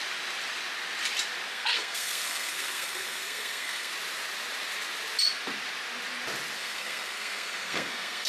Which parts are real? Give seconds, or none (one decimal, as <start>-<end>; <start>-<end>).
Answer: 0.0-1.5; 3.9-6.6